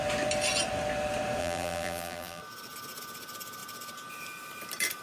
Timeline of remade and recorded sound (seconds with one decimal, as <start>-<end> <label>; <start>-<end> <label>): 0.0-1.4 recorded; 1.4-2.4 remade; 2.4-5.0 recorded